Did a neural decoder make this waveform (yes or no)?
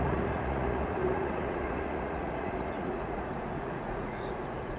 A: yes